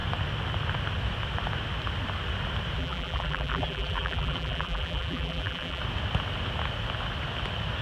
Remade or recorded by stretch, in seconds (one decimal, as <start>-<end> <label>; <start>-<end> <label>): 0.0-2.8 recorded; 2.8-5.8 remade; 5.8-7.8 recorded